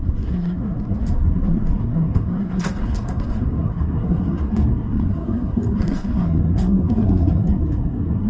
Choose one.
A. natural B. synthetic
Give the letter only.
B